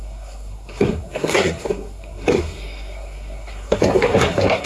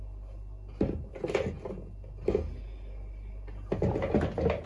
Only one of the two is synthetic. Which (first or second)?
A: first